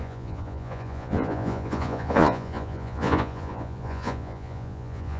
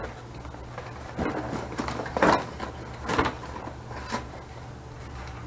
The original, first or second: second